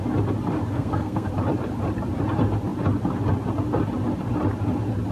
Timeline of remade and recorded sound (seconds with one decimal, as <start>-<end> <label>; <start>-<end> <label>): 0.0-0.7 recorded; 0.7-1.3 remade; 1.3-5.1 recorded